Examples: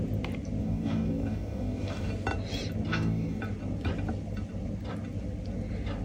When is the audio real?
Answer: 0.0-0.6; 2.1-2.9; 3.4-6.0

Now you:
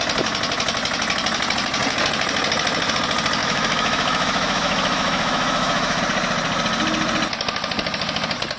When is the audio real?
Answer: 0.0-3.4; 6.0-8.6